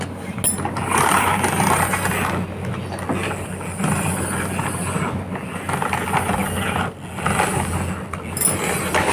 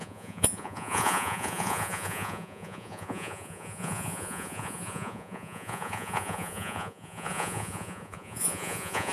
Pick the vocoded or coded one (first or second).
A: second